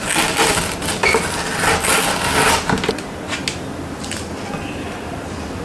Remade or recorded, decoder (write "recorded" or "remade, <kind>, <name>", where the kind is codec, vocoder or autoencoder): recorded